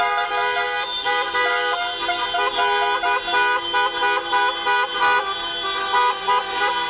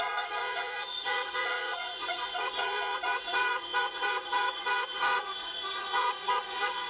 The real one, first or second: first